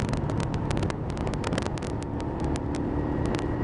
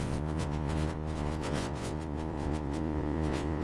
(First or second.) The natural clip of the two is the first